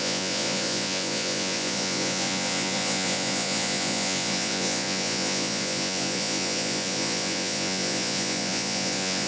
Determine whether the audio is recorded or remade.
remade